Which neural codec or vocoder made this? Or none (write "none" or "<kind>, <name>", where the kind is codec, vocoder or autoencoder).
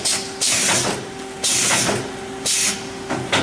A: none